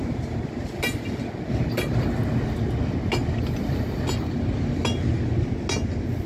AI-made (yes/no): no